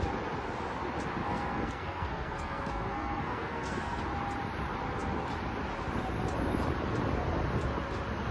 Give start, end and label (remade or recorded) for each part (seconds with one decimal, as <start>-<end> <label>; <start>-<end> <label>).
0.0-1.2 recorded; 1.2-4.0 remade; 4.0-8.3 recorded